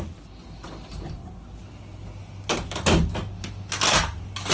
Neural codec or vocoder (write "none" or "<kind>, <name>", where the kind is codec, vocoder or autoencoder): none